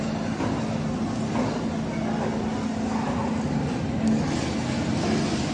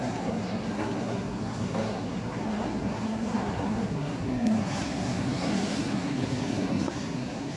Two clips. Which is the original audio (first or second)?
first